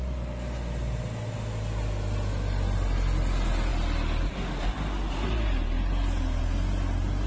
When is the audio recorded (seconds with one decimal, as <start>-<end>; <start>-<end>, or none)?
0.0-7.3